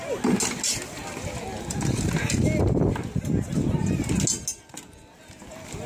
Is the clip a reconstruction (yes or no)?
no